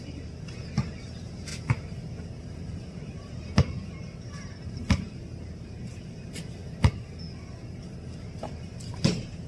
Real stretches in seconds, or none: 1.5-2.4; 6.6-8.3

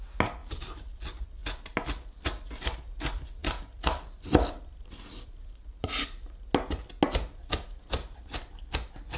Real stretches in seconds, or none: 0.0-0.4; 1.0-3.4; 5.8-9.2

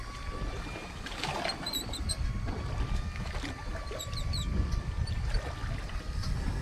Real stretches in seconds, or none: 0.0-0.8; 2.1-6.6

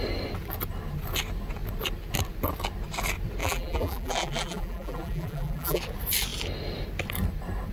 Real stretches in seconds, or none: 0.0-3.4; 5.8-7.7

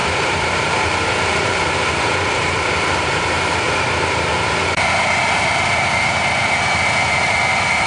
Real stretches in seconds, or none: none

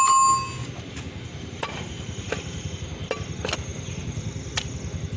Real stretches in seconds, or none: 0.0-0.6; 2.7-5.2

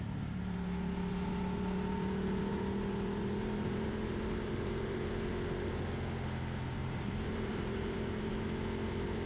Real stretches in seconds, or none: 0.0-2.5; 5.1-6.8; 8.3-9.3

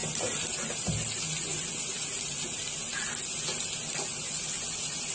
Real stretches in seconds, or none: 0.0-5.1